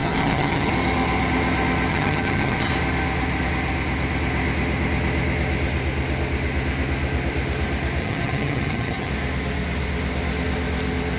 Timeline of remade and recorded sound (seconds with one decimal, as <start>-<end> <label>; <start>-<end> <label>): 0.0-0.7 remade; 0.7-1.9 recorded; 1.9-2.7 remade; 2.7-8.0 recorded; 8.0-9.1 remade; 9.1-11.2 recorded